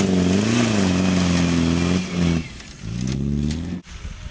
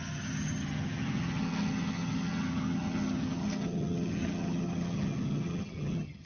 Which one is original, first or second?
first